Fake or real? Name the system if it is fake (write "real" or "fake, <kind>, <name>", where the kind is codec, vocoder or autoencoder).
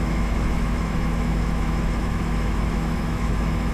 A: fake, autoencoder, DAC-VAE